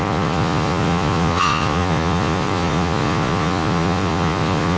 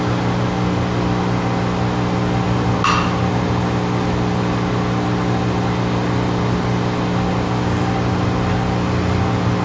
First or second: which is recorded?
second